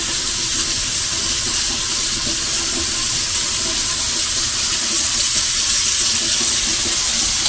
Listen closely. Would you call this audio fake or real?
real